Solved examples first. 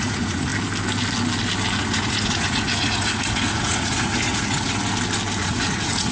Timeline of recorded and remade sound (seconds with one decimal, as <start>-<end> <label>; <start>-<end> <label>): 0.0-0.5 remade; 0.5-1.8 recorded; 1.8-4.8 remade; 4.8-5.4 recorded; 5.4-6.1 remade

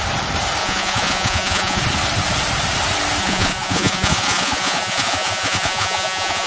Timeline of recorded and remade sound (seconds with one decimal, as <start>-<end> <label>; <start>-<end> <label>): 0.0-0.6 recorded; 0.6-1.8 remade; 1.8-3.2 recorded; 3.2-6.5 remade

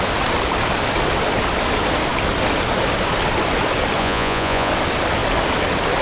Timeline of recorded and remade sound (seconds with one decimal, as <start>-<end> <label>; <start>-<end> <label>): 0.0-4.0 recorded; 4.0-4.7 remade; 4.7-6.0 recorded

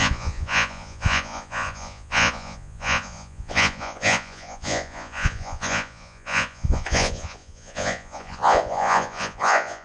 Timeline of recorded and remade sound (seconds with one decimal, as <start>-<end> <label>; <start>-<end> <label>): 0.0-9.8 remade

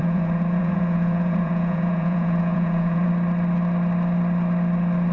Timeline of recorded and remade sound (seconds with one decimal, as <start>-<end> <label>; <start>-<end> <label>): 0.0-3.1 remade; 3.1-5.1 recorded

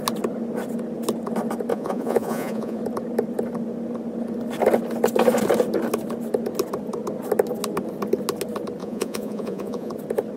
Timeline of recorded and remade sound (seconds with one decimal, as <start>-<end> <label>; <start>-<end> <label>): 0.0-1.7 recorded; 1.7-2.8 remade; 2.8-8.8 recorded; 8.8-9.9 remade; 9.9-10.4 recorded